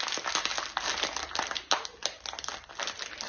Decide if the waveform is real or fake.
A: real